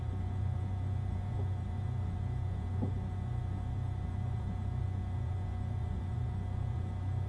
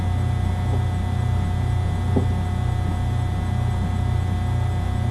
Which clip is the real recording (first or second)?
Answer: second